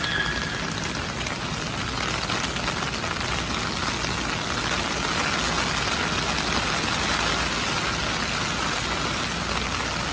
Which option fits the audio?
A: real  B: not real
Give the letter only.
A